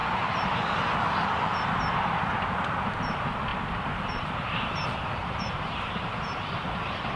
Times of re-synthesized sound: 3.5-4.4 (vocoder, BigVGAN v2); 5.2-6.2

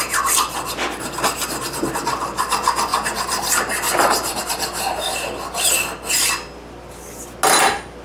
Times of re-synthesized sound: none

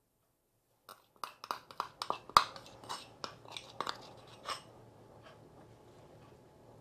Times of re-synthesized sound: none

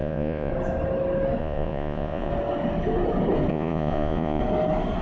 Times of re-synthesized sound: 0.0-0.5 (vocoder, Vocos); 1.4-2.3; 3.5-4.4